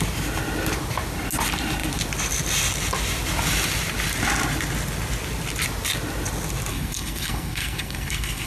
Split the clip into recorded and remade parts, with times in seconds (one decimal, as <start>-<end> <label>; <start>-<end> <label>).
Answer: 0.0-6.7 recorded; 6.7-8.5 remade